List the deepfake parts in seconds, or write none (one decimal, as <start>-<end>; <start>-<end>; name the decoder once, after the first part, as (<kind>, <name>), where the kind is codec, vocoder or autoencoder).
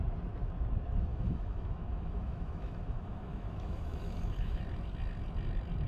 1.1-4.6 (autoencoder, DAC-VAE)